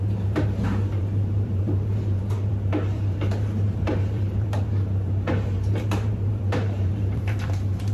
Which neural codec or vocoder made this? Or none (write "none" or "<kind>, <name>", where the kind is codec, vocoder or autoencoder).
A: vocoder, BigVGAN v2